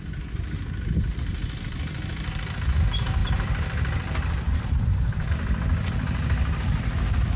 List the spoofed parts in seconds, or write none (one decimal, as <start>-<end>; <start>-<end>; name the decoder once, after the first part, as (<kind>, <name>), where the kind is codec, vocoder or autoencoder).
1.3-2.1 (vocoder, BigVGAN v2); 3.2-5.3